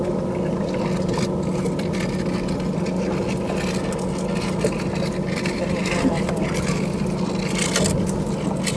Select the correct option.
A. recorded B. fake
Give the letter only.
A